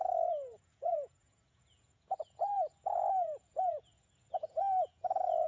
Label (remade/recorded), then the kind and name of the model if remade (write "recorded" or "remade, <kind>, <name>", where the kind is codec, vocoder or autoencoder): remade, vocoder, Vocos